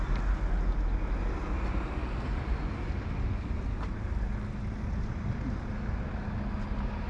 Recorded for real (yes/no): yes